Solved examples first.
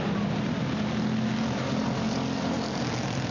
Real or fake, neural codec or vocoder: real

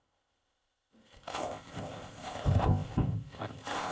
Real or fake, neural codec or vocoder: fake, codec, ZipCodec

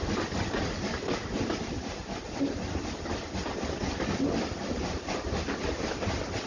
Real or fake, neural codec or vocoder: real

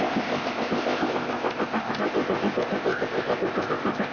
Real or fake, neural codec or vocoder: fake, codec, ZipCodec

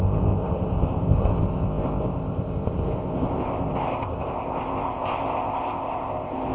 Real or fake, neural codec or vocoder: fake, codec, ZipCodec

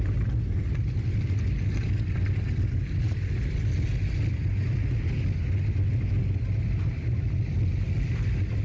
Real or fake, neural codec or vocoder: real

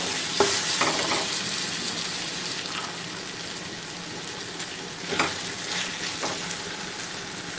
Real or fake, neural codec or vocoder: real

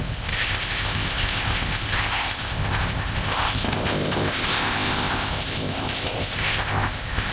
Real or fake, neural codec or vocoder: fake, codec, ZipCodec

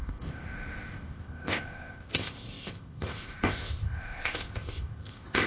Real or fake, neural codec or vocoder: fake, codec, ZipCodec